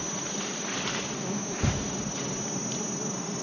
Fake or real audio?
real